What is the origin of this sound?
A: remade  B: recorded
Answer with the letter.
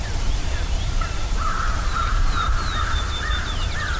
A